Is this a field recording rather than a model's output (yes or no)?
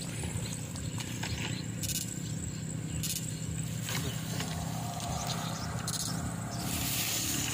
yes